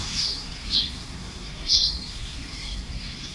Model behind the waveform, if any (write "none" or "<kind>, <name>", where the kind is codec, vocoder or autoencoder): codec, SNAC